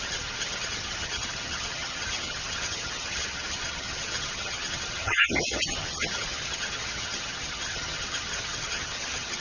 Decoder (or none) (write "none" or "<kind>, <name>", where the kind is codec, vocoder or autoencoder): vocoder, HiFi-GAN